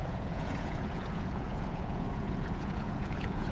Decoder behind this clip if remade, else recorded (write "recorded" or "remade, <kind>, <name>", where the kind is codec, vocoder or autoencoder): remade, vocoder, Vocos